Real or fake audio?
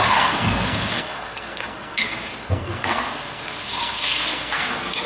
fake